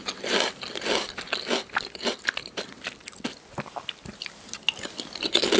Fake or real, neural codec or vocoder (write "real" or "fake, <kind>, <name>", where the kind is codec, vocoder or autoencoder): real